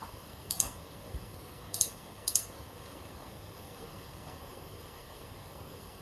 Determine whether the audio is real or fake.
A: fake